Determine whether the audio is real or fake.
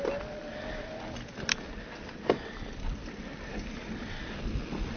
real